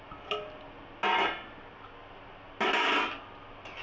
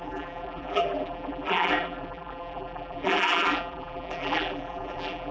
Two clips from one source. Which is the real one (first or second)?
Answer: first